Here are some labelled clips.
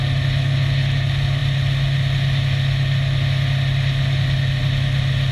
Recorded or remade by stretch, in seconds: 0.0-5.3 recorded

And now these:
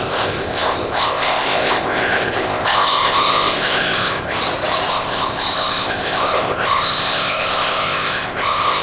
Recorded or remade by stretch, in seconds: 0.0-4.4 remade; 4.4-4.9 recorded; 4.9-8.8 remade

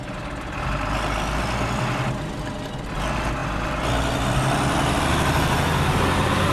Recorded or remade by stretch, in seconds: 0.0-6.5 recorded

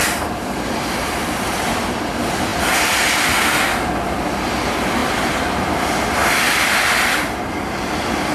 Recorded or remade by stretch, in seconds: 0.0-8.3 recorded